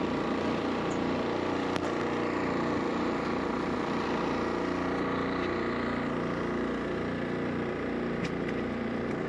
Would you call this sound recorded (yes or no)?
no